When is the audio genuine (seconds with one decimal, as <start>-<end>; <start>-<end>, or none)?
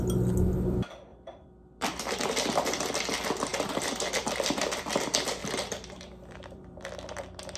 0.0-1.1; 2.0-3.5; 4.8-5.4; 6.8-7.6